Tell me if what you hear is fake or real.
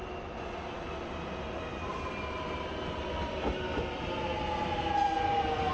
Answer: real